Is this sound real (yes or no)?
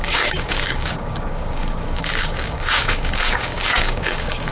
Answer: no